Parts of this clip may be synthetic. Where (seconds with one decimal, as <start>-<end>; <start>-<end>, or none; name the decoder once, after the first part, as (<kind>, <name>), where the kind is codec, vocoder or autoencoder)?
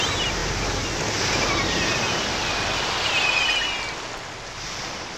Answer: none